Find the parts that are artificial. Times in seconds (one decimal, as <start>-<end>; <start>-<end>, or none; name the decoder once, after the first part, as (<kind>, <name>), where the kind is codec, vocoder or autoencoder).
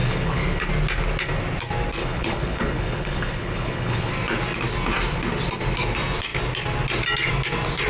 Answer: 0.0-0.7 (codec, HILCodec); 2.0-4.1